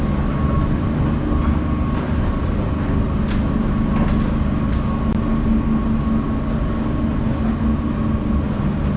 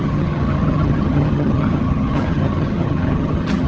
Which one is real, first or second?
first